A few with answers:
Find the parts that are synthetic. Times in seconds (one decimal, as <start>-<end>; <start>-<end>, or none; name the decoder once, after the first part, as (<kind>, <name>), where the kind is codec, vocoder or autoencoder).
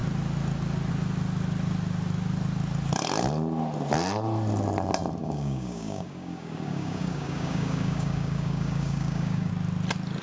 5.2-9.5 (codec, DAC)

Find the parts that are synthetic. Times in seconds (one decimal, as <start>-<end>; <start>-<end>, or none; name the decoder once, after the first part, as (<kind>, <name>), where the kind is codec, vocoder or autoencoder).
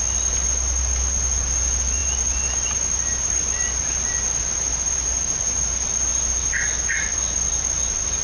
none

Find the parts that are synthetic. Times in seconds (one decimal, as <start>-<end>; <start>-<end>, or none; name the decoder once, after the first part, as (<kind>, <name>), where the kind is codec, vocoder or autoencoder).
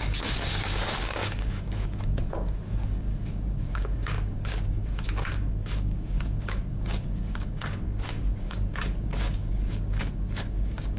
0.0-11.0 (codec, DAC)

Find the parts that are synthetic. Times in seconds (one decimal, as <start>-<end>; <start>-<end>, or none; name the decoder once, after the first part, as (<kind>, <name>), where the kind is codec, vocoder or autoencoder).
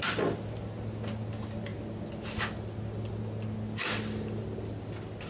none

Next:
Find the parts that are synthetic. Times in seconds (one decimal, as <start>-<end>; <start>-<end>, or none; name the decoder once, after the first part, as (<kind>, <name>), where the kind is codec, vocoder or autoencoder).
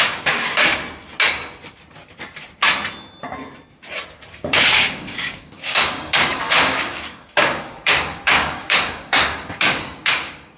0.0-0.7 (codec, DAC); 4.3-10.6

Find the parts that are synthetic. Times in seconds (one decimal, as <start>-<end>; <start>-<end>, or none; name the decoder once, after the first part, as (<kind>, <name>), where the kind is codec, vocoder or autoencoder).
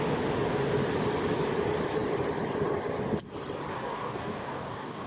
3.7-5.1 (codec, DAC)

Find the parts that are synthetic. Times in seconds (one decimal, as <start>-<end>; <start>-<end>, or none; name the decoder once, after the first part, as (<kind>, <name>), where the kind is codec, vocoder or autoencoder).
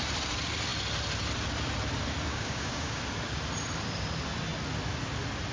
2.3-3.0 (codec, DAC)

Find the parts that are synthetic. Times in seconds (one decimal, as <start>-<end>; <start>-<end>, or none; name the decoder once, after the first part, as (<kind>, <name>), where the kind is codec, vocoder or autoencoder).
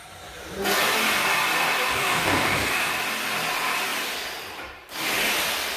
1.9-2.9 (codec, DAC)